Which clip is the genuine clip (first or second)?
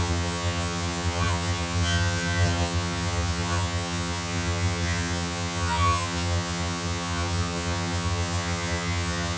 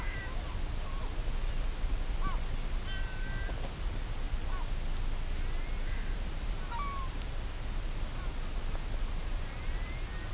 second